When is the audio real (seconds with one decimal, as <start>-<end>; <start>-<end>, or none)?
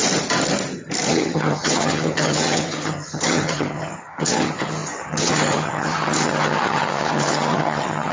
0.0-1.1